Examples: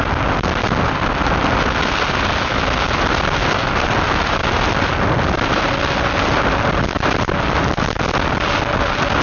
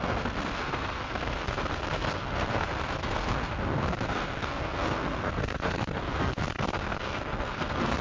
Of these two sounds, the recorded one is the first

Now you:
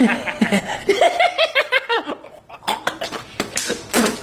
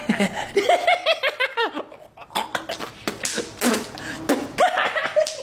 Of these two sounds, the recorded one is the second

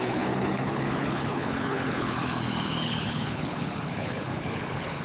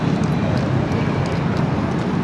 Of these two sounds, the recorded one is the second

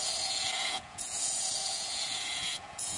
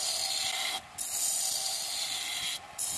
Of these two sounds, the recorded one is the second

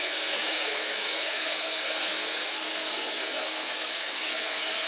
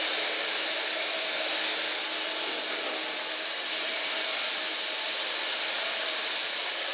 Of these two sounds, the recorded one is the second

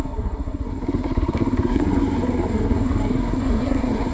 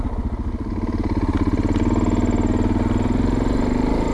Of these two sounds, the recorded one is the second